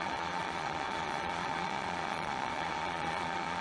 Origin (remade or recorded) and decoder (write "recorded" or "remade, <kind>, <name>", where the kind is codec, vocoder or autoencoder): remade, vocoder, Vocos